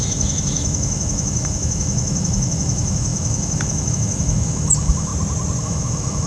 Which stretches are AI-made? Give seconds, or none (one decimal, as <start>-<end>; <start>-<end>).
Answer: 0.0-5.1; 5.6-6.3